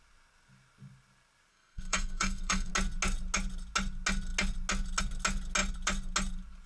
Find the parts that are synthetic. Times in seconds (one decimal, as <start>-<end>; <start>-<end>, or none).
1.5-2.7